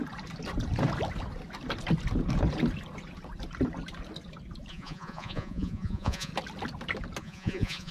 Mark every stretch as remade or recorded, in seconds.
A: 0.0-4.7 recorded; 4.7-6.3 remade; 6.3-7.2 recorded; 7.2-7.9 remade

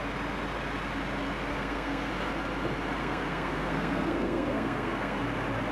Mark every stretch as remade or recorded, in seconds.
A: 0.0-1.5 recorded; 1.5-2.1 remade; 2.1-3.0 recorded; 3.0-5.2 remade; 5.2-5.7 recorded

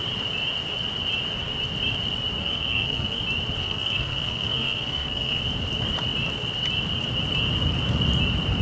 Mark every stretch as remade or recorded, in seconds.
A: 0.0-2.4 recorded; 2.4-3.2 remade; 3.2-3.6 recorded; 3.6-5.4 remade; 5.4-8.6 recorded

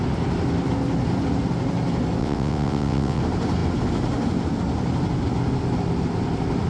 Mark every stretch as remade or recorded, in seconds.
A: 0.0-2.2 recorded; 2.2-3.2 remade; 3.2-6.7 recorded

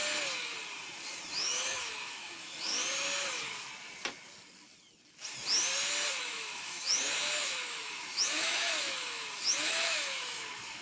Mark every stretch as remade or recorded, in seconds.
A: 0.0-1.3 recorded; 1.3-2.7 remade; 2.7-6.1 recorded; 6.1-10.8 remade